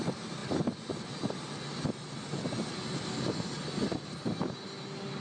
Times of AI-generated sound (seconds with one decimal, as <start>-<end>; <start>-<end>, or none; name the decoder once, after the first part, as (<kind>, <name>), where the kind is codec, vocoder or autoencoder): none